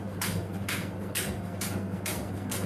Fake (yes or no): yes